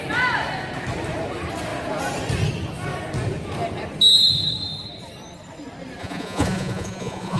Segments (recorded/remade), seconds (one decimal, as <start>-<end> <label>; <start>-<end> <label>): 0.0-6.0 recorded; 6.0-7.4 remade